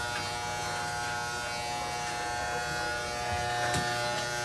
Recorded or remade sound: recorded